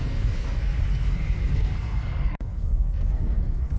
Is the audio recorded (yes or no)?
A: no